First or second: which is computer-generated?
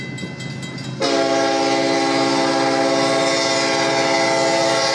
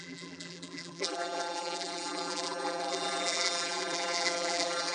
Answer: second